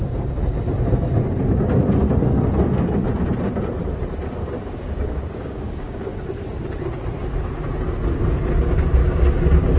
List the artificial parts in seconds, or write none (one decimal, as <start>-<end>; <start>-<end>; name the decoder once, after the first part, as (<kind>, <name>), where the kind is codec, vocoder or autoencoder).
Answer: 4.4-6.4 (codec, DAC); 9.0-9.8